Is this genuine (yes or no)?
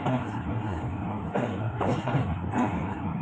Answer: no